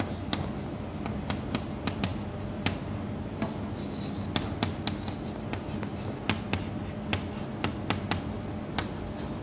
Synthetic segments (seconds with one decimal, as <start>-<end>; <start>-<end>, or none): none